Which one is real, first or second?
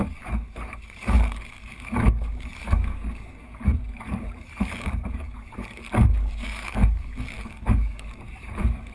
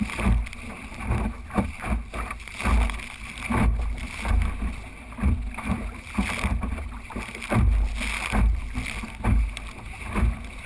second